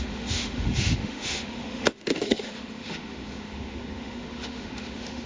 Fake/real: fake